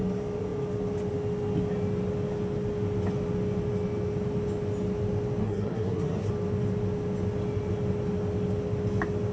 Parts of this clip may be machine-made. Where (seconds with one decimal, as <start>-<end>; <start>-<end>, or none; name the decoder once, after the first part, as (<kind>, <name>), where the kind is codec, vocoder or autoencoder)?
5.4-6.3 (codec, SNAC)